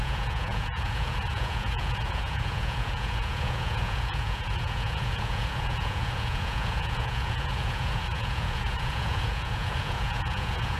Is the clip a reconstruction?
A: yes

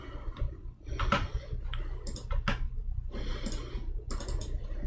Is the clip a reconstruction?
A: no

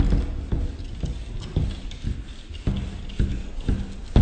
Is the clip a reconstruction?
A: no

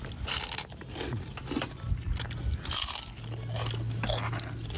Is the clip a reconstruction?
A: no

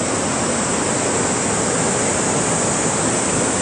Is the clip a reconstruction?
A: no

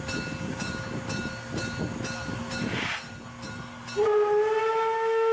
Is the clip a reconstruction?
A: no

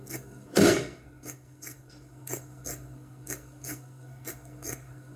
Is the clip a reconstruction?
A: yes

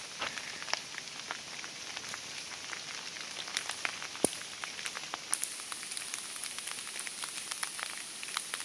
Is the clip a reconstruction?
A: no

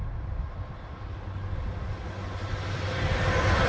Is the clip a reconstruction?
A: no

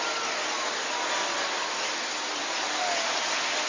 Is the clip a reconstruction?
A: no